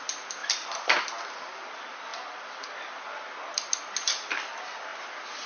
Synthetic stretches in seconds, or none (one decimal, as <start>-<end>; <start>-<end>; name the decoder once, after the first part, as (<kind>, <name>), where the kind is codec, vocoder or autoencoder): 0.4-1.0 (vocoder, BigVGAN v2); 2.1-3.0

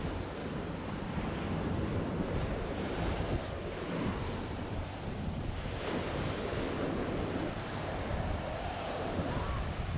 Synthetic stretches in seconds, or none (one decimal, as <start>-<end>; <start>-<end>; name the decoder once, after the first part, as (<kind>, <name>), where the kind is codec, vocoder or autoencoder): 0.4-5.7 (vocoder, BigVGAN v2)